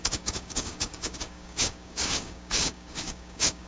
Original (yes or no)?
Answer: no